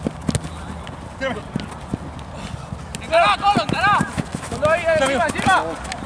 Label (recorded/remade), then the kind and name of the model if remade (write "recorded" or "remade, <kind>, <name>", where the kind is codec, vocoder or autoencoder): recorded